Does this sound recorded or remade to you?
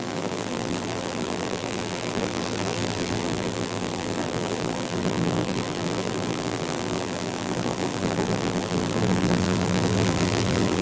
remade